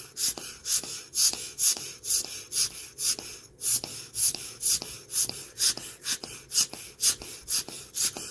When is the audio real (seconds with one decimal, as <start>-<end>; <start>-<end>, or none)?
0.0-0.6; 1.8-3.9; 4.6-8.3